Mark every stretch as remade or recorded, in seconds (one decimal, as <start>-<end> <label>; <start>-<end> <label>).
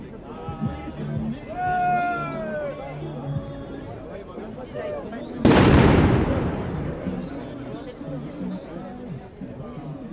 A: 0.0-3.2 recorded; 3.2-7.3 remade; 7.3-8.9 recorded; 8.9-10.1 remade